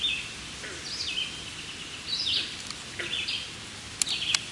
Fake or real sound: real